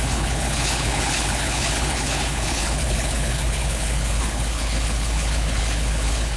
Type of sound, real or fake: fake